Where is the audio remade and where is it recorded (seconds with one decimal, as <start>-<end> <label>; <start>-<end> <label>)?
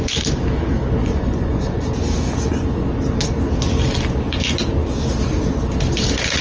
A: 0.0-1.0 recorded; 1.0-1.9 remade; 1.9-6.4 recorded